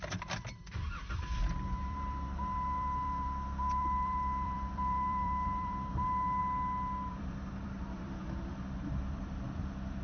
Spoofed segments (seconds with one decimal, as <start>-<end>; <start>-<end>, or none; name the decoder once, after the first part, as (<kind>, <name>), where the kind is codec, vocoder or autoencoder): 0.0-6.4 (vocoder, BigVGAN v2); 7.1-10.0